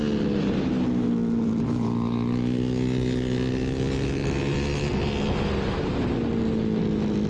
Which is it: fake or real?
real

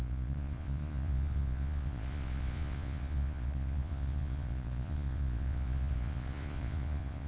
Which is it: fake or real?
fake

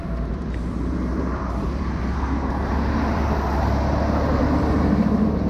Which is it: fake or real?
fake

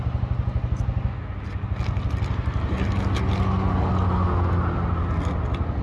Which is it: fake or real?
real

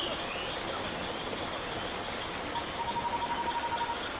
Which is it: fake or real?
real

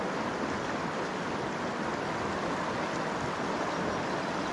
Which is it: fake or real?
real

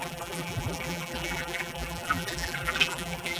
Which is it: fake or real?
fake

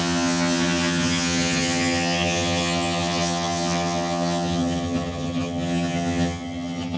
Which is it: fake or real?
fake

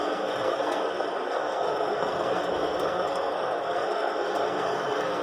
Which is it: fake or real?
fake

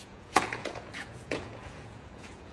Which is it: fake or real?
fake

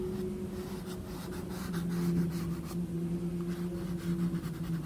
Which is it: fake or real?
real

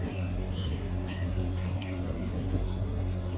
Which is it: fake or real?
fake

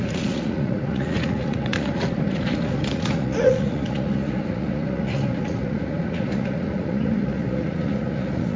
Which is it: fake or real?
fake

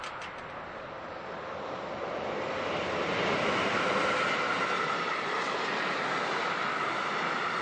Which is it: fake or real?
real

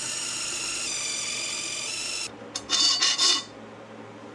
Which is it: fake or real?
real